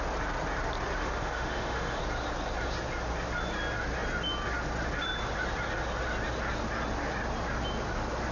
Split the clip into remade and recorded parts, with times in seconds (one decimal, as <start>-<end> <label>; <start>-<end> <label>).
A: 0.0-1.0 recorded; 1.0-2.0 remade; 2.0-8.3 recorded